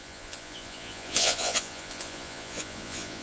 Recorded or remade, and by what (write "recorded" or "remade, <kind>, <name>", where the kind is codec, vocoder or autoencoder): remade, vocoder, Vocos